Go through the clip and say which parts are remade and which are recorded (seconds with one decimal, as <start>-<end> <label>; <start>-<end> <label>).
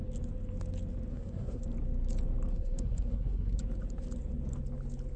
0.0-1.1 recorded; 1.1-1.6 remade; 1.6-2.5 recorded; 2.5-3.6 remade; 3.6-5.2 recorded